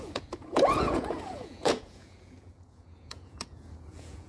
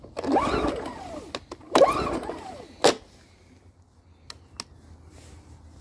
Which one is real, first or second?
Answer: second